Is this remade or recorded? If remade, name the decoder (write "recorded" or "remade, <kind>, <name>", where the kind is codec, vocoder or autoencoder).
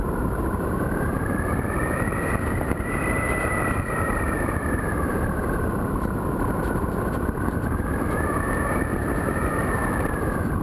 remade, vocoder, BigVGAN v2